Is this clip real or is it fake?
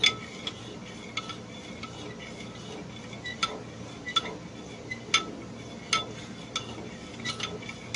real